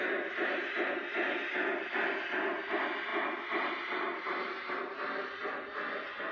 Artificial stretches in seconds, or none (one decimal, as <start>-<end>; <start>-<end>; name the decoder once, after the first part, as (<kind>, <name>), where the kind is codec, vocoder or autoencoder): none